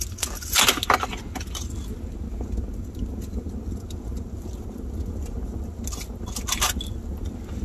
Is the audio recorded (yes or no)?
yes